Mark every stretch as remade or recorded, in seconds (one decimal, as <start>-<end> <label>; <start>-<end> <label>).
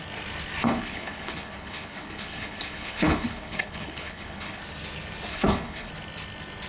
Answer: 0.0-0.6 recorded; 0.6-4.6 remade; 4.6-5.3 recorded; 5.3-5.9 remade; 5.9-6.7 recorded